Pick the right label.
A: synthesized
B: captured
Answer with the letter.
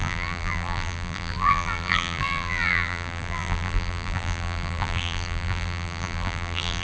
A